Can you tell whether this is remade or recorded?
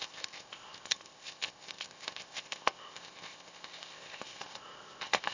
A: remade